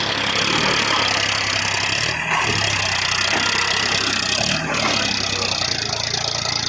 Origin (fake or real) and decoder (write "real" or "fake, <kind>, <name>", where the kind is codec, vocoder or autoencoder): real